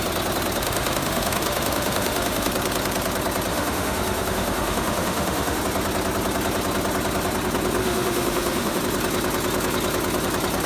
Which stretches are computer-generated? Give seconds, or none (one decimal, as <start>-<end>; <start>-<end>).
0.6-2.5; 3.5-5.6; 7.8-8.8